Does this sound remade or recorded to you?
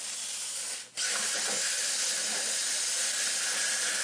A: recorded